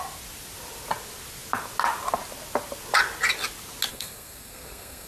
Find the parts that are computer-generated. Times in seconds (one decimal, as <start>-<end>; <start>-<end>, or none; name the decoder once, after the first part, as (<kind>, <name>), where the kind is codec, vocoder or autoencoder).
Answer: 3.9-5.1 (codec, SNAC)

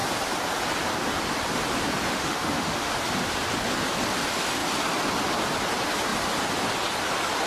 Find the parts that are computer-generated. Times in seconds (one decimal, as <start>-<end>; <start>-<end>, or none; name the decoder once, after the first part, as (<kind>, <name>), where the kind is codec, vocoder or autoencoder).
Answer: 2.1-2.9 (autoencoder, DAC-VAE)

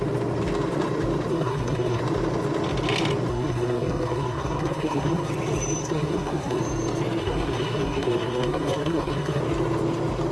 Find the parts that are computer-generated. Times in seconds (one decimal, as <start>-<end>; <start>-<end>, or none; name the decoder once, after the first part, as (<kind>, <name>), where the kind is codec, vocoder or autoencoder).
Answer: 1.3-2.0 (codec, SNAC); 3.3-5.3; 5.8-6.6; 7.2-9.4

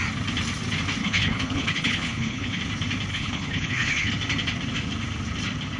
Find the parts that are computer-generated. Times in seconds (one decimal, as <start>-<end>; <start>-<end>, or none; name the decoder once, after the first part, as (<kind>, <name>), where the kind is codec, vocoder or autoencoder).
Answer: 1.0-2.6 (codec, HILCodec); 3.1-4.1

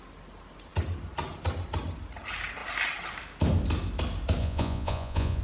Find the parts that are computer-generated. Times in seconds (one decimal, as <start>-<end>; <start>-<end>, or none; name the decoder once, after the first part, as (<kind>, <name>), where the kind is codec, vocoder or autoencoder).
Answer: 4.4-5.4 (vocoder, Vocos)

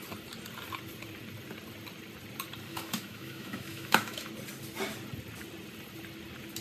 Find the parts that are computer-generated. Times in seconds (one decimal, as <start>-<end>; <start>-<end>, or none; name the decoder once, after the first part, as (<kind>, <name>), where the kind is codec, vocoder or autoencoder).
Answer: 2.7-4.3 (autoencoder, DAC-VAE)

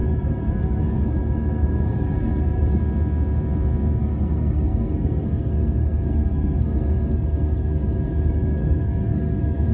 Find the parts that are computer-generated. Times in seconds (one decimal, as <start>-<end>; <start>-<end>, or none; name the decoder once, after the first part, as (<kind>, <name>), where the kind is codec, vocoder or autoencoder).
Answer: 0.0-2.8 (codec, SNAC); 4.0-9.7

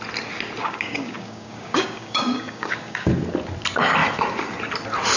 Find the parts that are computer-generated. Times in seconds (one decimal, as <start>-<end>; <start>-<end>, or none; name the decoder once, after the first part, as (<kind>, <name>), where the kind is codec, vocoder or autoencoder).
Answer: 0.6-3.1 (codec, DAC)